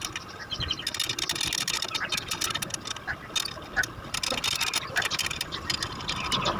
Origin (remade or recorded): recorded